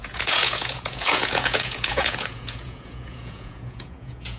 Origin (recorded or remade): remade